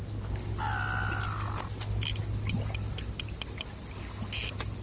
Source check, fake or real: real